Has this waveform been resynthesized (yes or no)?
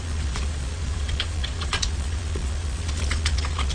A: yes